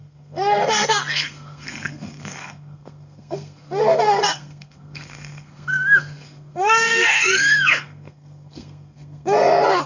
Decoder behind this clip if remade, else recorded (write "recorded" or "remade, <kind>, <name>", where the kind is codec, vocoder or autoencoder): remade, codec, SNAC